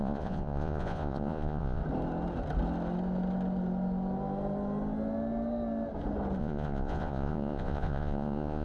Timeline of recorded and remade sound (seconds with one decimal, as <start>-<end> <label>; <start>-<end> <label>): 0.0-1.8 remade; 1.8-6.4 recorded; 6.4-8.6 remade